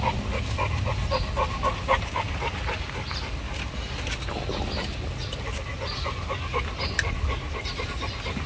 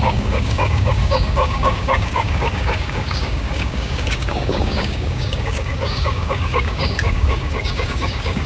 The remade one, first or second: second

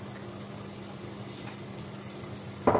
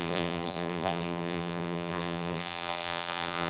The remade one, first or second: second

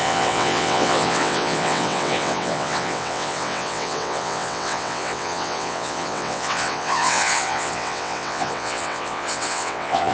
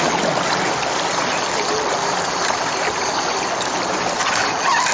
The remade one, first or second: first